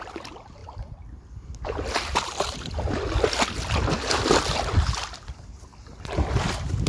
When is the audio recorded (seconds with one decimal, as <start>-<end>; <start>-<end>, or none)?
0.0-6.9